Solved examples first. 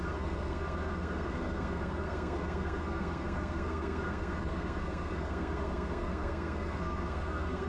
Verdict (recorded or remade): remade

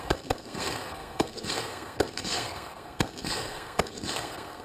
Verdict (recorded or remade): remade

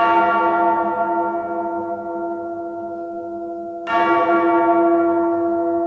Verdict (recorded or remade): recorded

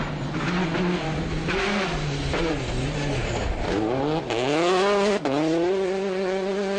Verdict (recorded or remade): recorded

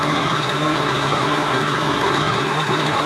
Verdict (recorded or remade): remade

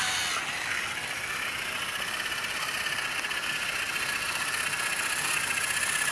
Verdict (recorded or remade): recorded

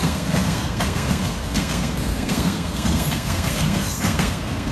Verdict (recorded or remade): remade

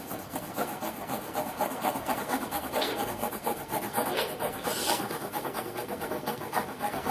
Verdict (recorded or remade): remade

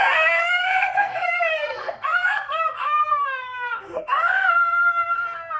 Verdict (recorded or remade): remade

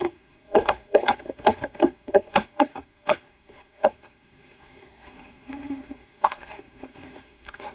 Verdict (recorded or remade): remade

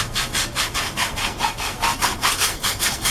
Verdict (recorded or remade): remade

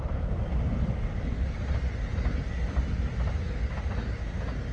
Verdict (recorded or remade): recorded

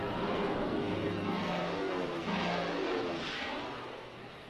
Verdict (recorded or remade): remade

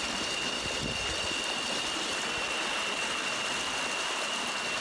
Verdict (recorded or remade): recorded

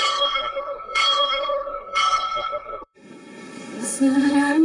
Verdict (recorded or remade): remade